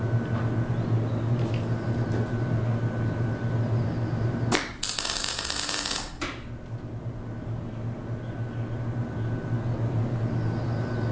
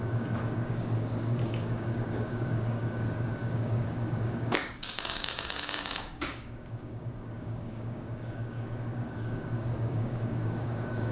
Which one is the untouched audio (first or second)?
first